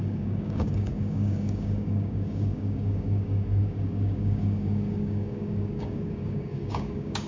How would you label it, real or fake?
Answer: fake